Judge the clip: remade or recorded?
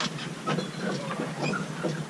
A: recorded